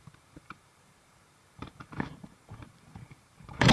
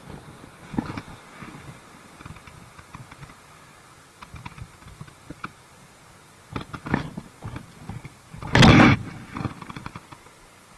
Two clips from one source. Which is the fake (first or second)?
first